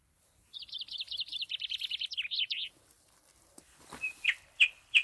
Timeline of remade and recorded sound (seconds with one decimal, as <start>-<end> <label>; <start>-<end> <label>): 0.0-5.0 remade